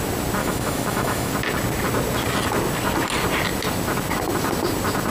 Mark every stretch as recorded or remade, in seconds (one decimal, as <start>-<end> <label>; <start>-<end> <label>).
0.0-0.4 recorded; 0.4-1.3 remade; 1.3-5.1 recorded